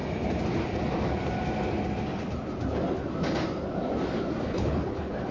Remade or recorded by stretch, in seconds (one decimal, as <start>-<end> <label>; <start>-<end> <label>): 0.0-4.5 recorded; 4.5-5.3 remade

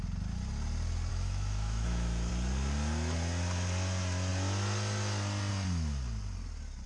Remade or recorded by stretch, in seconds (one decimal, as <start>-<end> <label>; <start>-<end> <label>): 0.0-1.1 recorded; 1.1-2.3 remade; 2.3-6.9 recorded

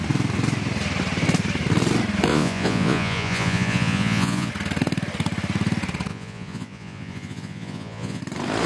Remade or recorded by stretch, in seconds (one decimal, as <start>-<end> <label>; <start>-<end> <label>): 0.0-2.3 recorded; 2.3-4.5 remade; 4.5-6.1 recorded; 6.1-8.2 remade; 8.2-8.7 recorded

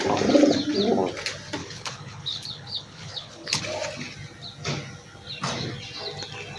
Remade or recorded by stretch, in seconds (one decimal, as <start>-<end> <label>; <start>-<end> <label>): 0.0-1.6 recorded; 1.6-3.6 remade; 3.6-6.6 recorded

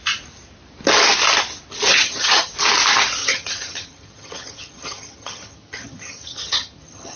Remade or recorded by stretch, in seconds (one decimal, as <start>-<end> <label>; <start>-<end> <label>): 0.0-1.9 recorded; 1.9-2.5 remade; 2.5-3.2 recorded; 3.2-7.2 remade

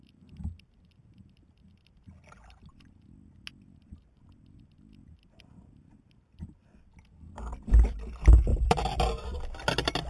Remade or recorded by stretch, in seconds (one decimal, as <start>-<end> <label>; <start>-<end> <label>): 0.0-10.1 recorded

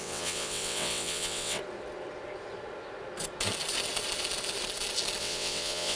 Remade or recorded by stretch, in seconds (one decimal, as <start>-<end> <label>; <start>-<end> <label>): 0.0-1.6 remade; 1.6-5.2 recorded; 5.2-6.0 remade